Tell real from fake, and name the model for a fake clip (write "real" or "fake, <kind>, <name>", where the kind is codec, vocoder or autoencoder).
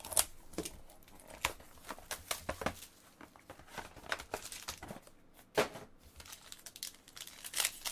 real